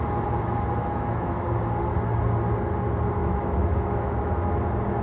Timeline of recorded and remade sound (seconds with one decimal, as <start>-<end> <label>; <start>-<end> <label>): 0.0-0.8 recorded; 0.8-1.6 remade; 1.6-3.2 recorded; 3.2-4.3 remade; 4.3-5.0 recorded